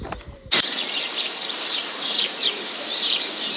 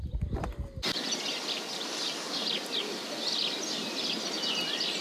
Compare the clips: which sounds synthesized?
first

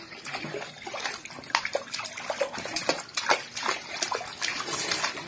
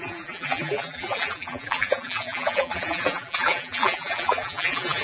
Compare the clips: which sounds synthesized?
second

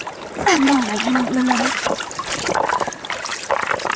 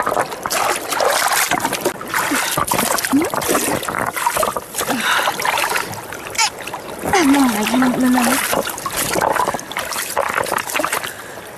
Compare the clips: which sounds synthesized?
first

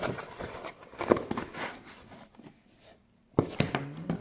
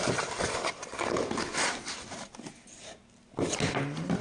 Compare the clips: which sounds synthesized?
first